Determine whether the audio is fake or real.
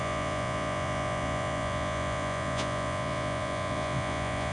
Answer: fake